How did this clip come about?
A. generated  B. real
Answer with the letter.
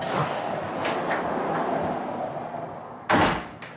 B